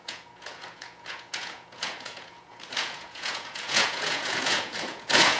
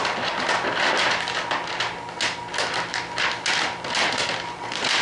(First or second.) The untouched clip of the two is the second